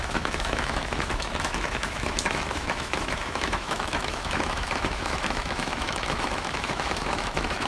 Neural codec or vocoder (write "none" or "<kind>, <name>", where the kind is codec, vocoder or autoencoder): autoencoder, DAC-VAE